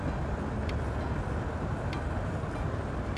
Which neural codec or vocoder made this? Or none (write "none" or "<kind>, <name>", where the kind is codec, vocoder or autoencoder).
none